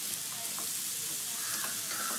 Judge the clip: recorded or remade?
recorded